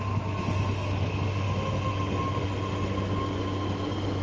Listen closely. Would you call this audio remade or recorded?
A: recorded